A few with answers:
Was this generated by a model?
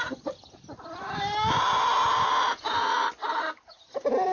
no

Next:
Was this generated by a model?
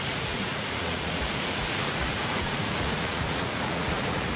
yes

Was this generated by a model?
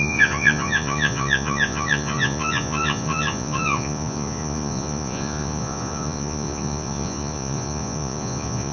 yes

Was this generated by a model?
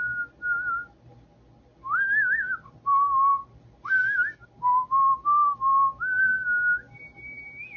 no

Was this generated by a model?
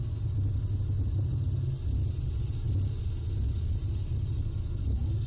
no